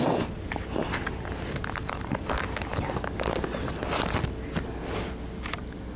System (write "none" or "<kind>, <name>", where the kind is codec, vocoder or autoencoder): none